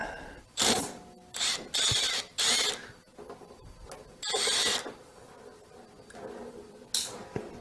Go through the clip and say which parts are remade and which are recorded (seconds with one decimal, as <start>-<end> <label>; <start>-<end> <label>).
0.0-7.6 recorded